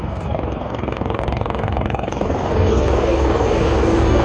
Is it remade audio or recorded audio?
remade